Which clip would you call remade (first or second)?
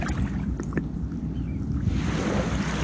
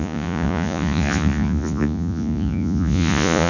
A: second